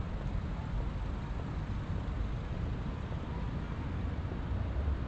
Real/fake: real